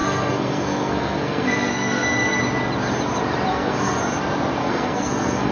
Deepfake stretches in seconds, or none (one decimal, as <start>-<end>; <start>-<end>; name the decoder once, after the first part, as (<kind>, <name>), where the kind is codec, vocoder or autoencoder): 0.0-2.4 (codec, SNAC); 3.5-4.0; 4.6-5.5